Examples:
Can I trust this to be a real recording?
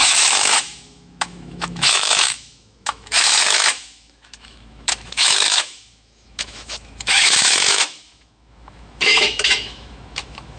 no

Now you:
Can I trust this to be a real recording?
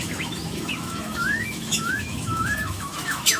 no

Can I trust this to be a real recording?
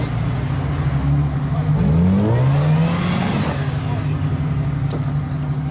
yes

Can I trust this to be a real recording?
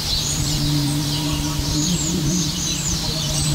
no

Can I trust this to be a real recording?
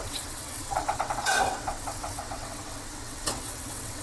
no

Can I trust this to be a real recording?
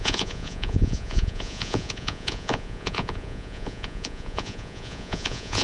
no